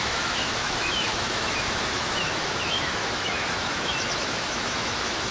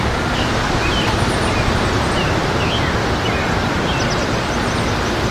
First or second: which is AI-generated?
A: first